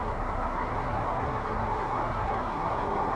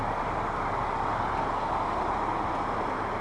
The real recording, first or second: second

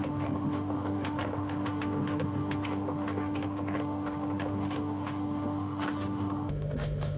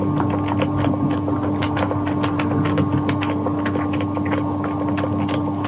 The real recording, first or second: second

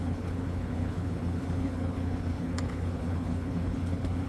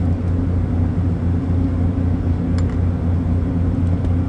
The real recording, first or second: second